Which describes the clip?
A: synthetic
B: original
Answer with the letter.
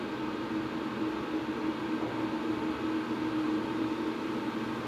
B